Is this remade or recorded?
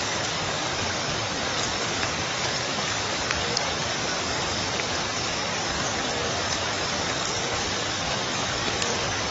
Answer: remade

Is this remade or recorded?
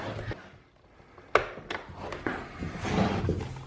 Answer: recorded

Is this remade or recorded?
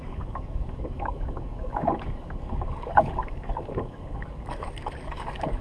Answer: remade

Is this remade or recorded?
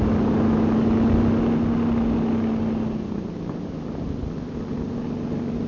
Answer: recorded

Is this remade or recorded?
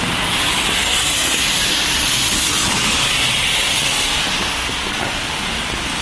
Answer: recorded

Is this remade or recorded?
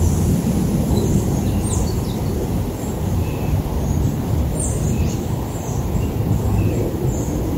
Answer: recorded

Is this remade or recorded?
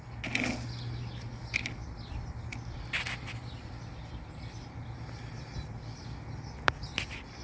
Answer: recorded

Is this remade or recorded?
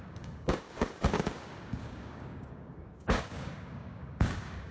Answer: remade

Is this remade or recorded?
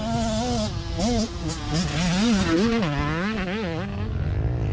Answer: recorded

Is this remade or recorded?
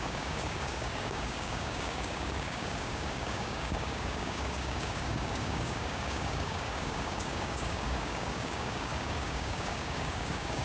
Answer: remade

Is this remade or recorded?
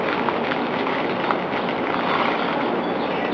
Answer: recorded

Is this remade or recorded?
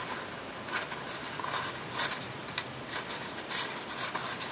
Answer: recorded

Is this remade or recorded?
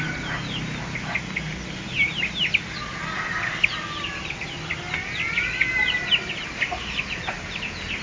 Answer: recorded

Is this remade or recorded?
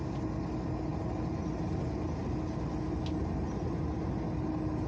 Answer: recorded